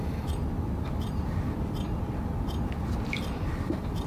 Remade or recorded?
remade